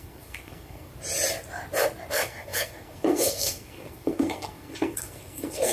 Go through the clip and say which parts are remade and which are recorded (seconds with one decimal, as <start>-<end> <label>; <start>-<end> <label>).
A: 0.0-0.9 remade; 0.9-2.1 recorded; 2.1-5.7 remade